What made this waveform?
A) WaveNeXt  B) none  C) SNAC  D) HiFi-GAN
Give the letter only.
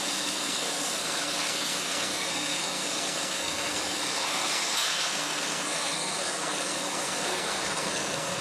C